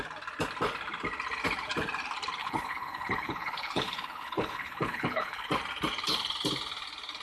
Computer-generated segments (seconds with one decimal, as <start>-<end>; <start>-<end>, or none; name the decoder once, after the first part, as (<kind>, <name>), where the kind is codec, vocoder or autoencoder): 2.4-5.5 (codec, HILCodec)